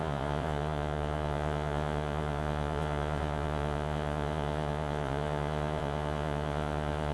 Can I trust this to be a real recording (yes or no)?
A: no